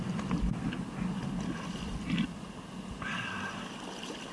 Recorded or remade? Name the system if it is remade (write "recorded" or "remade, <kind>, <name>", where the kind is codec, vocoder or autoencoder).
recorded